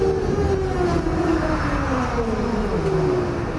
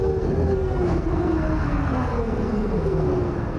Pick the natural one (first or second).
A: first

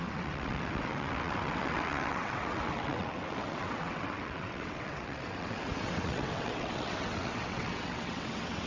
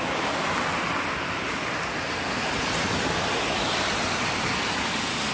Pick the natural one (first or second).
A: second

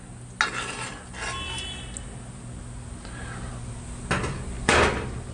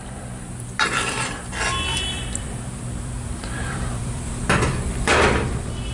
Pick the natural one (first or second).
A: first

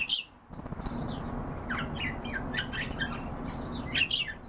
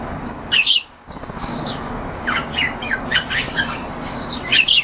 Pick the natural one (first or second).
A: first